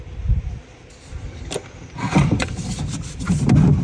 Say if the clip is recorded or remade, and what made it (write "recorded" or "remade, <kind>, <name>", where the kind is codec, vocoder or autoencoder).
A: remade, vocoder, BigVGAN v2